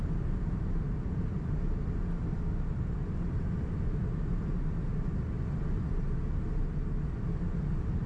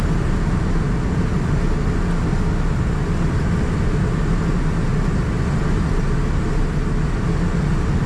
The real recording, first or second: second